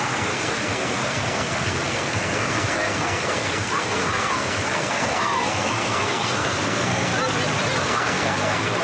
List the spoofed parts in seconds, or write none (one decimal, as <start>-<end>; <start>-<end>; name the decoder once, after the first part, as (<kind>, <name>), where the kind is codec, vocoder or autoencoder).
0.0-7.1 (codec, SNAC); 7.8-8.8